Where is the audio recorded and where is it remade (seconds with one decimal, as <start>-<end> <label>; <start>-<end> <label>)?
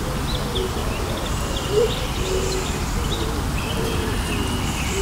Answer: 0.0-0.8 recorded; 0.8-3.8 remade; 3.8-5.0 recorded